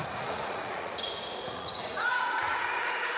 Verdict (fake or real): fake